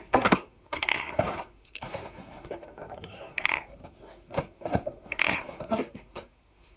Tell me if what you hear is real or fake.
fake